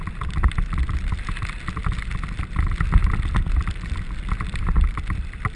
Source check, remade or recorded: recorded